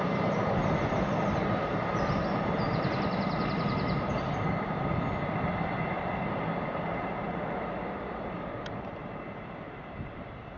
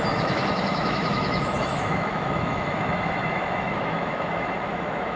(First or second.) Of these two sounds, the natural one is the first